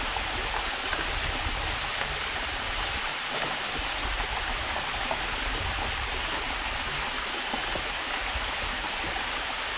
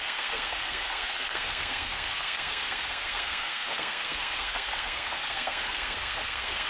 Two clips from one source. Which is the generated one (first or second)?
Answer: second